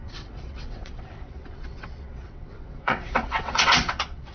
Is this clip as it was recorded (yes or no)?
no